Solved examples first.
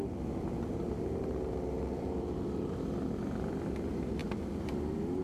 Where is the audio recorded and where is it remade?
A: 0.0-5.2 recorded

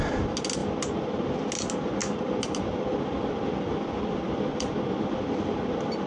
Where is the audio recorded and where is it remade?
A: 0.0-6.1 recorded

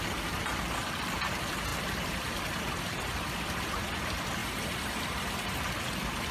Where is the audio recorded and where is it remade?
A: 0.0-4.4 recorded; 4.4-5.6 remade; 5.6-6.3 recorded

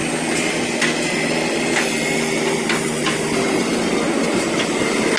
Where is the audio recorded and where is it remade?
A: 0.0-3.0 recorded; 3.0-3.8 remade; 3.8-5.2 recorded